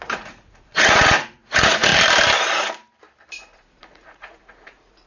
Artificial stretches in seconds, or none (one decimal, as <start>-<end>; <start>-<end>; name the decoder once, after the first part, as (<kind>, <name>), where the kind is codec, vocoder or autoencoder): 0.0-1.9 (vocoder, Vocos); 3.3-5.1